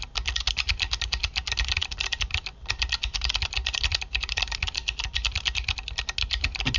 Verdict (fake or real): real